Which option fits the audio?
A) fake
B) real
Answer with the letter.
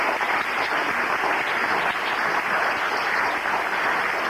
B